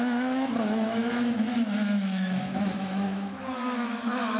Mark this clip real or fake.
fake